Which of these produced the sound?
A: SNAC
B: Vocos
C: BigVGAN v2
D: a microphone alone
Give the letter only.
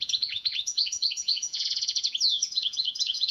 B